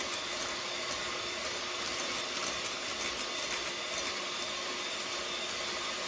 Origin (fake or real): real